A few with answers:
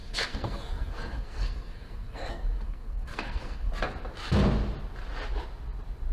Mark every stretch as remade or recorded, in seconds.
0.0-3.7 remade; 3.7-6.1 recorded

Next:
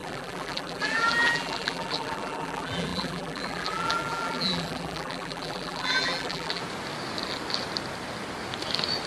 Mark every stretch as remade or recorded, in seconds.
0.0-6.6 remade; 6.6-9.1 recorded

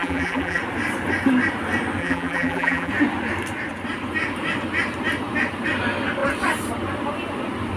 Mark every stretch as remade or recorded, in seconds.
0.0-0.6 remade; 0.6-2.0 recorded; 2.0-2.9 remade; 2.9-7.8 recorded

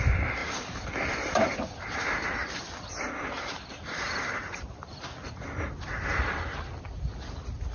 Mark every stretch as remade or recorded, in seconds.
0.0-0.4 recorded; 0.4-5.0 remade; 5.0-7.7 recorded

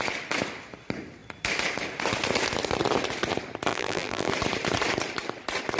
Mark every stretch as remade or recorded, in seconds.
0.0-3.7 recorded; 3.7-4.3 remade; 4.3-5.8 recorded

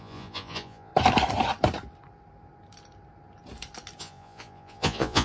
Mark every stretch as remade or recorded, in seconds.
0.0-0.9 remade; 0.9-4.0 recorded; 4.0-5.2 remade

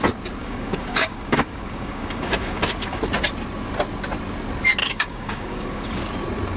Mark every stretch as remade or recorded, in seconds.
0.0-0.4 recorded; 0.4-3.0 remade; 3.0-4.8 recorded; 4.8-6.0 remade; 6.0-6.6 recorded

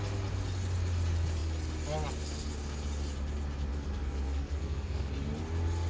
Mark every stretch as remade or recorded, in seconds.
0.0-3.7 recorded; 3.7-5.1 remade; 5.1-5.9 recorded